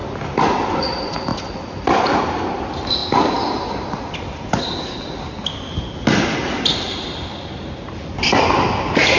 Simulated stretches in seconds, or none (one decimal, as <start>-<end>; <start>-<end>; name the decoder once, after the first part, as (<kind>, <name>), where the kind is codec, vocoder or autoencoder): none